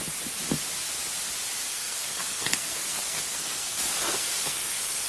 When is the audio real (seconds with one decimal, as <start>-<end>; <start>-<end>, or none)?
0.0-1.7